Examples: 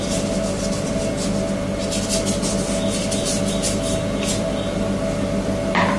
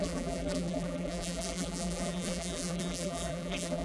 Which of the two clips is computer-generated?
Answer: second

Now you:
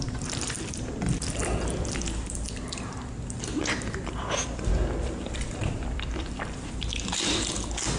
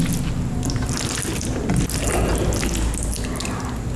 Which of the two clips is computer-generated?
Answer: first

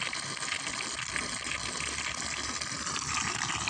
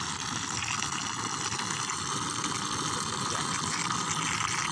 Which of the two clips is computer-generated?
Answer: first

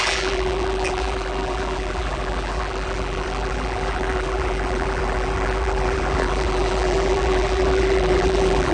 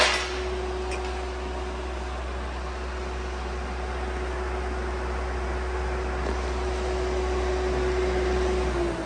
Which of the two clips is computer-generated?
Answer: first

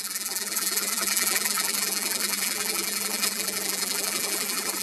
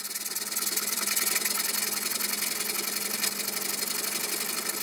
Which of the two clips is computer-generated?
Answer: first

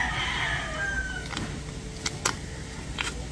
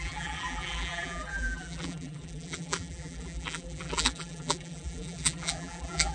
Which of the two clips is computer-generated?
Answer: second